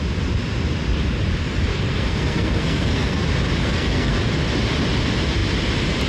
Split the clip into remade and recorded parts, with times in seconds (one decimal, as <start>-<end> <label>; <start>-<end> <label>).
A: 0.0-1.7 recorded; 1.7-3.2 remade; 3.2-3.6 recorded; 3.6-4.2 remade; 4.2-6.1 recorded